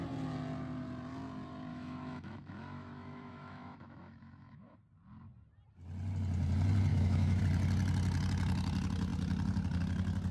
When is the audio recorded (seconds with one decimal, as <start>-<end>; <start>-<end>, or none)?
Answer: 0.0-1.7; 4.8-6.9; 7.4-10.3